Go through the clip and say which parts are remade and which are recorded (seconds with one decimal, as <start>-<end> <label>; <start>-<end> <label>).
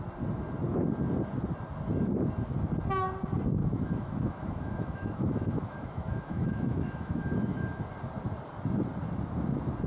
0.0-3.6 recorded; 3.6-7.8 remade; 7.8-9.9 recorded